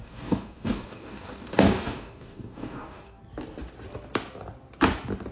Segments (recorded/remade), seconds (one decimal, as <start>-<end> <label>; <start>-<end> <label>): 0.0-3.2 remade; 3.2-5.3 recorded